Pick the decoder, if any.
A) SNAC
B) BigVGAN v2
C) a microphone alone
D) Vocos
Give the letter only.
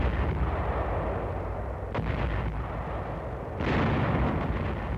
C